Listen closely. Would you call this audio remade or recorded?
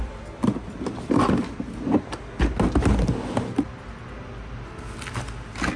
recorded